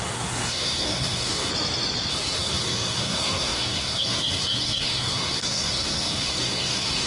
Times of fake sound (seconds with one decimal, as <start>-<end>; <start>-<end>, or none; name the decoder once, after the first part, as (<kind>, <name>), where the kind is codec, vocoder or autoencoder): 0.0-1.5 (codec, SNAC); 2.1-7.1